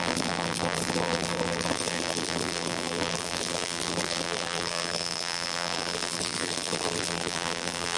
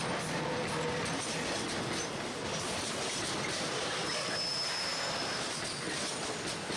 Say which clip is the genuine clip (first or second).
second